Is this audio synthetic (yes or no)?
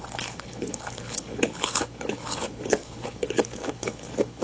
yes